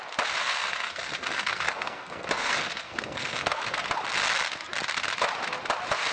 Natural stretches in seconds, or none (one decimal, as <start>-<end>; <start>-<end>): 0.0-0.4; 3.9-6.1